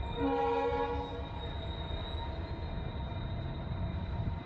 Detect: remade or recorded recorded